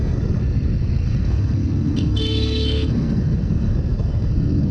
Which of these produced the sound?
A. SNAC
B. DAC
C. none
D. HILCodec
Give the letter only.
A